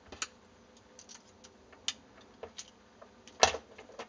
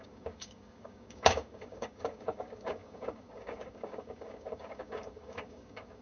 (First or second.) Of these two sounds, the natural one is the first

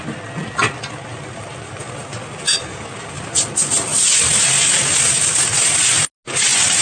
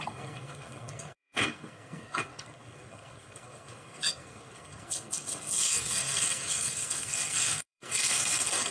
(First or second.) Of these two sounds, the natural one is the first